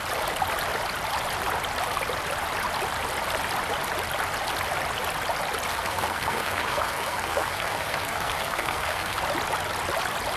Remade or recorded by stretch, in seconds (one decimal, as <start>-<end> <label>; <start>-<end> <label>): 0.0-5.7 recorded; 5.7-9.2 remade; 9.2-10.4 recorded